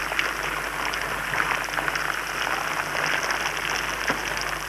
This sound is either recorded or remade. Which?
recorded